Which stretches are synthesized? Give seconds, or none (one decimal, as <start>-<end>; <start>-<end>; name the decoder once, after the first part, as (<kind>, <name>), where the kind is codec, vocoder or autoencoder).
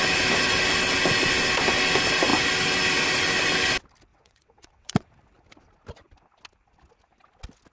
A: 4.1-5.1 (vocoder, WaveNeXt)